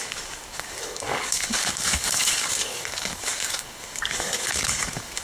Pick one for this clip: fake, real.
fake